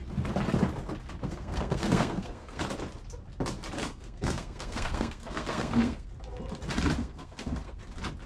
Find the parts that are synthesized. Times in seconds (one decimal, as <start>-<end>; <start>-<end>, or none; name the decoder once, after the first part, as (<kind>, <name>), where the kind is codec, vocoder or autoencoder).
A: 1.2-2.6 (codec, SNAC); 3.8-6.1; 7.0-7.8